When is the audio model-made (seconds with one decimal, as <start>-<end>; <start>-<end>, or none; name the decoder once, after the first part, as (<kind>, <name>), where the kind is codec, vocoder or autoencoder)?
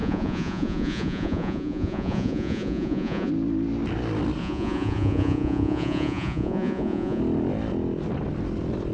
0.0-3.3 (vocoder, Vocos); 4.4-7.2